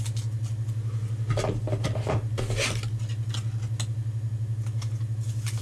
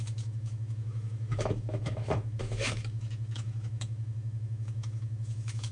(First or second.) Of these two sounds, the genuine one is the first